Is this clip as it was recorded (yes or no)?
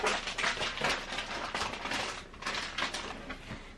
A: yes